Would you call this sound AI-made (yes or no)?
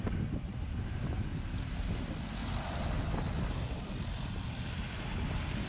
yes